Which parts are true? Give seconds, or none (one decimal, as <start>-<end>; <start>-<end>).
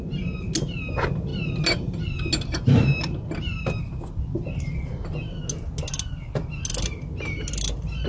0.0-8.1